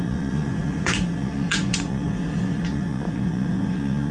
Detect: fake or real fake